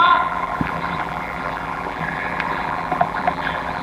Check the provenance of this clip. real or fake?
fake